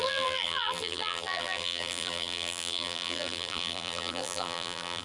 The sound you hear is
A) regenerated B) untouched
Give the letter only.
A